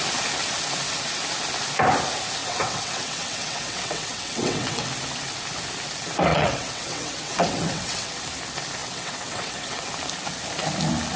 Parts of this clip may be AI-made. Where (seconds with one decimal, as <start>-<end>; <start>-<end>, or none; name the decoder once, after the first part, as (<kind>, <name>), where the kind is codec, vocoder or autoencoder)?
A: 2.4-4.9 (vocoder, WaveNeXt); 6.3-8.1; 8.8-9.9

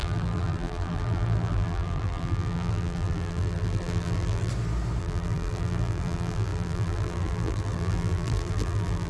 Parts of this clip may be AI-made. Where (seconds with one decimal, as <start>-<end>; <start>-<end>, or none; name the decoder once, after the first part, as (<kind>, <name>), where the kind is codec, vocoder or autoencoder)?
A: 0.0-4.5 (vocoder, BigVGAN v2); 5.0-9.1